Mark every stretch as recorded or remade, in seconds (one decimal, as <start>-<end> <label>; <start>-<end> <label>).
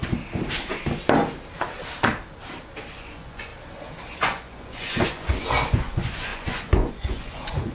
0.0-2.9 recorded; 2.9-3.5 remade; 3.5-4.1 recorded; 4.1-7.7 remade